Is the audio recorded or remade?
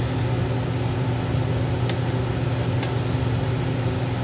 recorded